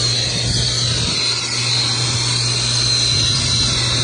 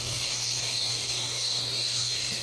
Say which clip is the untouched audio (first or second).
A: first